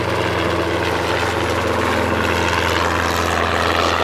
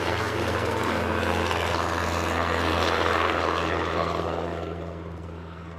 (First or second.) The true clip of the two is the first